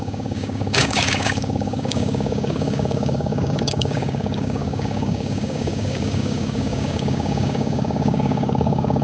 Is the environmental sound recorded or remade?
remade